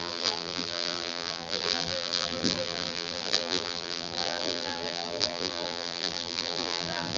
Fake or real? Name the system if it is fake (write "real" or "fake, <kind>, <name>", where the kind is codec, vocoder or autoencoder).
fake, vocoder, BigVGAN v2